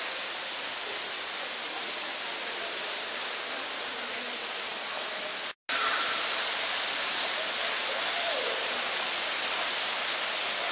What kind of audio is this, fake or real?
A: real